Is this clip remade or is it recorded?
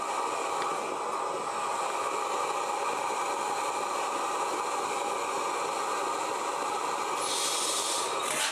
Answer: recorded